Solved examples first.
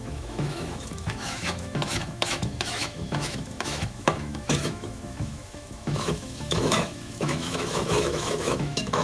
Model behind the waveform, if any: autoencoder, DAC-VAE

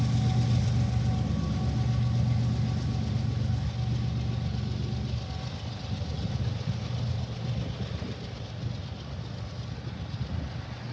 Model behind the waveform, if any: none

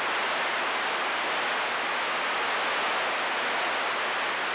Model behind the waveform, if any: none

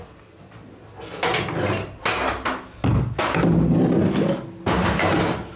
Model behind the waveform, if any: none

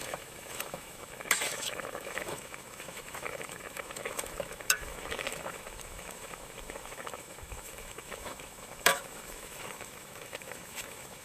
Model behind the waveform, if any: autoencoder, DAC-VAE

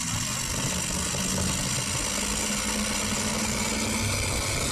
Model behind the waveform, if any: none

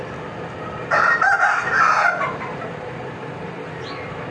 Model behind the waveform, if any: none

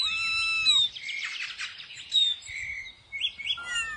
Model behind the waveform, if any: none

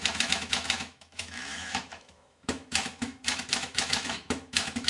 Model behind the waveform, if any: autoencoder, DAC-VAE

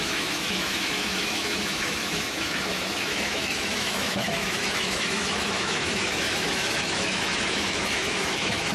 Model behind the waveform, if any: autoencoder, DAC-VAE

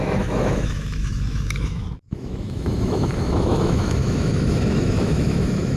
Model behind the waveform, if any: autoencoder, DAC-VAE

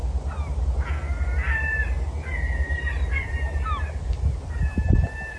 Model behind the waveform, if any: none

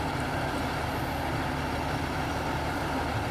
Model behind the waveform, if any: none